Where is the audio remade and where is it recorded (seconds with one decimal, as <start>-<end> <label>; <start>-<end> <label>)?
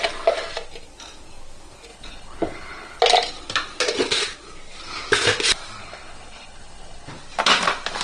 0.0-1.9 recorded; 1.9-3.0 remade; 3.0-5.8 recorded; 5.8-7.1 remade; 7.1-8.0 recorded